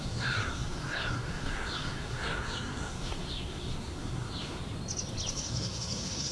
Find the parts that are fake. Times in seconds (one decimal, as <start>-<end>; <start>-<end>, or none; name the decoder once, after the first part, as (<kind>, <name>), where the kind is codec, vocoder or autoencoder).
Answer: 0.0-4.6 (codec, SNAC); 5.3-6.3